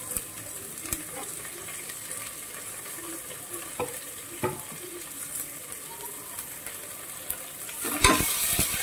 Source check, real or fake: fake